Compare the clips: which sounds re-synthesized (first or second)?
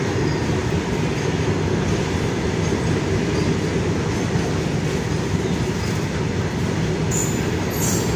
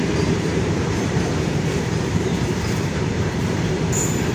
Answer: second